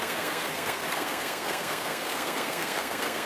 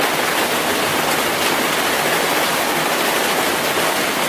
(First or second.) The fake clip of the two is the first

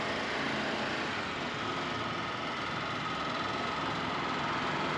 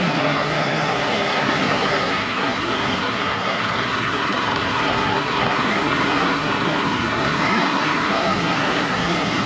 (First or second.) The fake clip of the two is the second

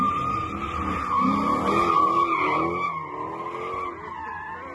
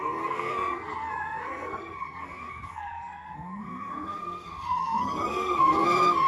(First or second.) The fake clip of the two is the second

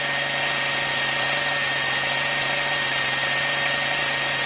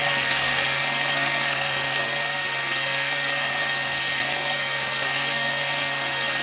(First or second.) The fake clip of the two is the second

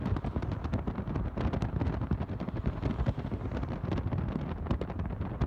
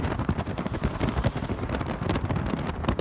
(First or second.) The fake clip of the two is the second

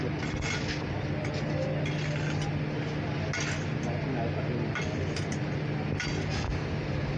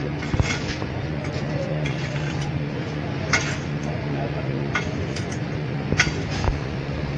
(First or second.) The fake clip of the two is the second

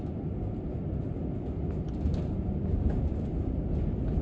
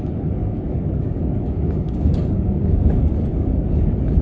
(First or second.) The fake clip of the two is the second